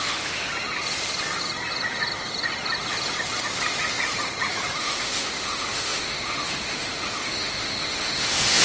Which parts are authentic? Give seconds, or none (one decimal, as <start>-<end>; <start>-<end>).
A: 0.5-4.8